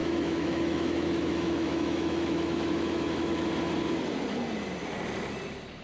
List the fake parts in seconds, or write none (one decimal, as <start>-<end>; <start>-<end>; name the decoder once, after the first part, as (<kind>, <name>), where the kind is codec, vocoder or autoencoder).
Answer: 0.0-3.5 (autoencoder, DAC-VAE)